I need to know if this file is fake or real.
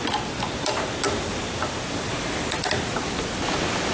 real